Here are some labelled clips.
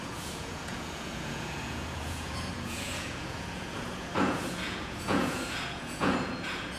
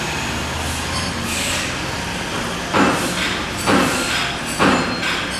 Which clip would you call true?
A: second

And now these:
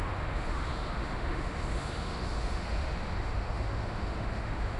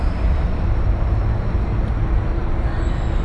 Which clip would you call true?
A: second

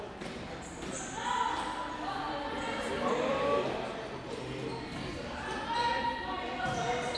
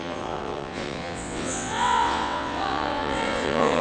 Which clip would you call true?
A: first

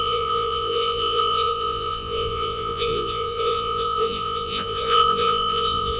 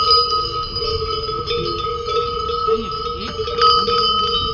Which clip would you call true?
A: second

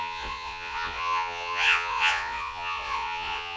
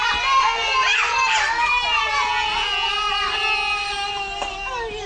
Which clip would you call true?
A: second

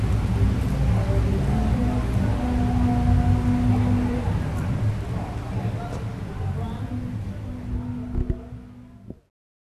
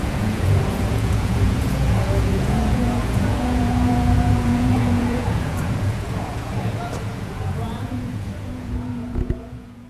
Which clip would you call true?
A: first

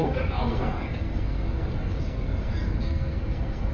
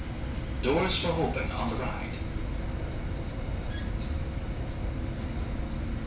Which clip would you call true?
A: second